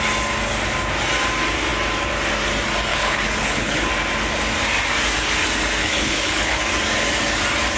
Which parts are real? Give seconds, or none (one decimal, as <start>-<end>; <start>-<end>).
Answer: 0.0-2.9; 3.9-5.8; 6.6-7.8